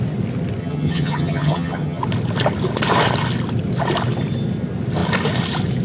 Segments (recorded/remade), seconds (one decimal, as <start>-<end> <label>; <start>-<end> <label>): 0.0-0.6 recorded; 0.6-2.0 remade; 2.0-5.8 recorded